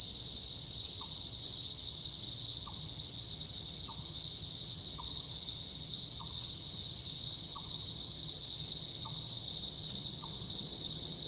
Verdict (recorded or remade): remade